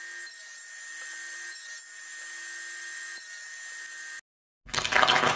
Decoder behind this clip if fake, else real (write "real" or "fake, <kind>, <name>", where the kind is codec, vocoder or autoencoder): real